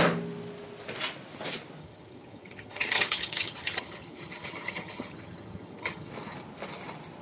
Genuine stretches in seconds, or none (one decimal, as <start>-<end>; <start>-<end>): 0.0-1.8; 6.1-7.2